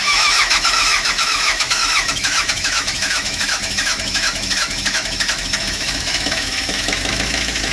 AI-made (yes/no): yes